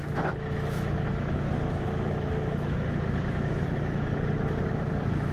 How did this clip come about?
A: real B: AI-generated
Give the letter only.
B